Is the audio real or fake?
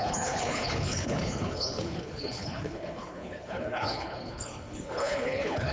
fake